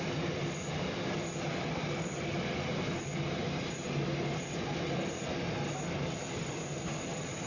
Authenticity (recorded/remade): recorded